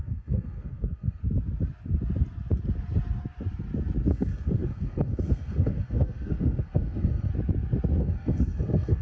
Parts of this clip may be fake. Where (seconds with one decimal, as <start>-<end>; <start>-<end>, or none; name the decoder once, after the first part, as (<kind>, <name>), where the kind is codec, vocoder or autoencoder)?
0.0-1.2 (codec, SNAC); 4.1-7.3; 8.0-9.0